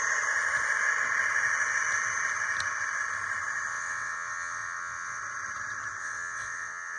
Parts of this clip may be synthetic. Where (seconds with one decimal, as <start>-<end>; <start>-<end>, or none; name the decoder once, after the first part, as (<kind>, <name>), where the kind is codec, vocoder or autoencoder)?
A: 3.7-5.2 (vocoder, WaveNeXt); 6.0-7.0